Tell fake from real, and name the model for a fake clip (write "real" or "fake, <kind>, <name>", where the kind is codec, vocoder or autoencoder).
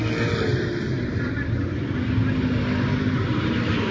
real